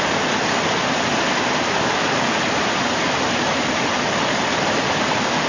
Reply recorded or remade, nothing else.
recorded